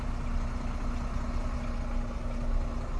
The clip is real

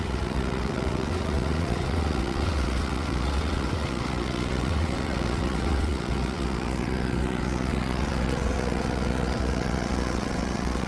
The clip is fake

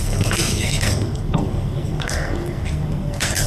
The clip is fake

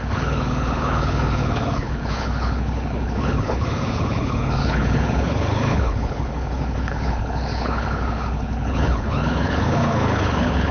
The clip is fake